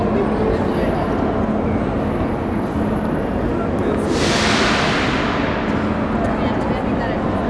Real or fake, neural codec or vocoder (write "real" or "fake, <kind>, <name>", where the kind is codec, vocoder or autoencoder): real